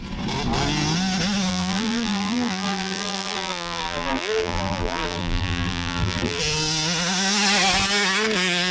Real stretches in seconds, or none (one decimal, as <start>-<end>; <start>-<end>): 0.0-1.5; 6.4-8.7